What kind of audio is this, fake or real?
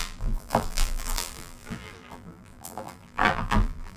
fake